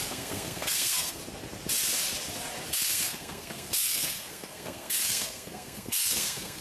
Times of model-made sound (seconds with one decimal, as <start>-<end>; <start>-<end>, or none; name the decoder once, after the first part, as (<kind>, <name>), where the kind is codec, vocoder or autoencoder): 0.0-1.2 (codec, SNAC); 2.7-6.6